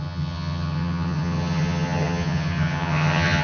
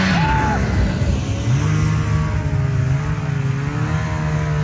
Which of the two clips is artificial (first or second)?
first